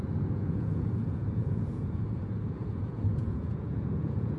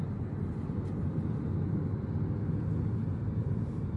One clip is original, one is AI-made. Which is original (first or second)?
second